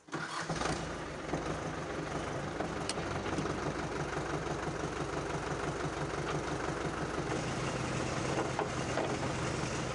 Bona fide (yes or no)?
yes